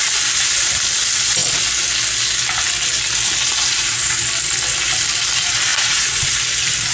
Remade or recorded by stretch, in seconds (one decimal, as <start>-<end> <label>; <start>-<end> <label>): 0.0-3.6 recorded; 3.6-4.2 remade; 4.2-5.7 recorded; 5.7-6.3 remade; 6.3-6.9 recorded